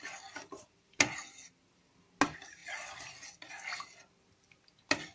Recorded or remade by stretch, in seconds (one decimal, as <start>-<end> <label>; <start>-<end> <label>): 0.0-5.1 recorded